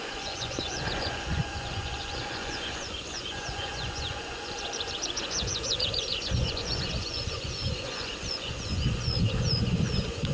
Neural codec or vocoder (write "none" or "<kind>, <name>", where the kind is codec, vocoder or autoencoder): vocoder, Vocos